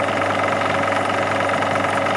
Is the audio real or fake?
real